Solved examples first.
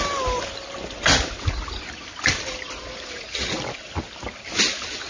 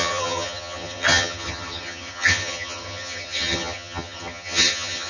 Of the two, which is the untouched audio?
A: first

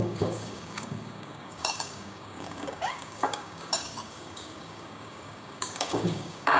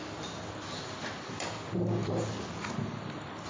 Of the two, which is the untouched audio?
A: second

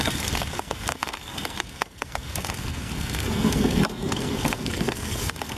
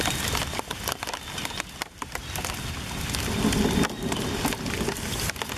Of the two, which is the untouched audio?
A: second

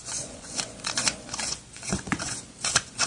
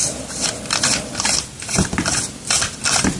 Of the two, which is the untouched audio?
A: second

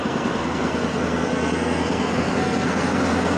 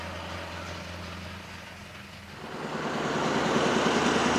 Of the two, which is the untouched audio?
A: second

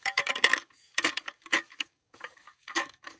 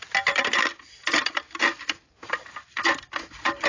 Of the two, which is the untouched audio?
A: second